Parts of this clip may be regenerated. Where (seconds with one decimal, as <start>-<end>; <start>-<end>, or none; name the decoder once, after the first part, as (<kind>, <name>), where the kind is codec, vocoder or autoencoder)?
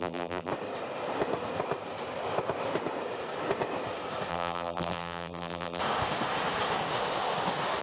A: 0.0-0.5 (vocoder, BigVGAN v2); 4.3-5.8